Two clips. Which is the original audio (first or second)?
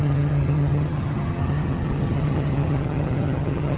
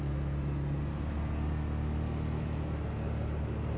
second